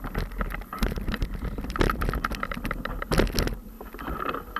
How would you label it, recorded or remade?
recorded